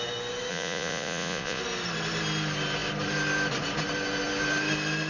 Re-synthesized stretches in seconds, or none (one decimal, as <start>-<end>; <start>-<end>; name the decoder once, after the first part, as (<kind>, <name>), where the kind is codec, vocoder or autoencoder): 0.5-1.6 (vocoder, Vocos)